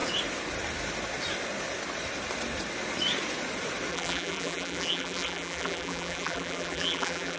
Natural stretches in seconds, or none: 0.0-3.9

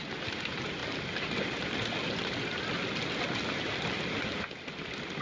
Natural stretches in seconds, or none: 0.0-5.2

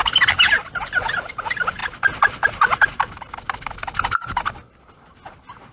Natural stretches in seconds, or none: 0.0-5.7